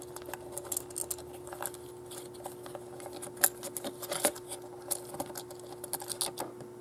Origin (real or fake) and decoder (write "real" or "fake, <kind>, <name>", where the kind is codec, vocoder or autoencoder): real